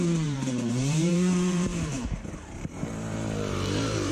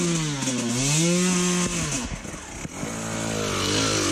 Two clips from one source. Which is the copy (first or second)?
first